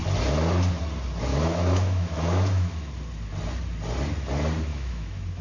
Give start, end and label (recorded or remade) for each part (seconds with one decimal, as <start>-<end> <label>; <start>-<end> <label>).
0.0-1.3 recorded; 1.3-2.9 remade; 2.9-4.7 recorded; 4.7-5.4 remade